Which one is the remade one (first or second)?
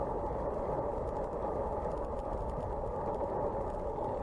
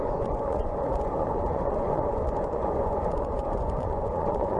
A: second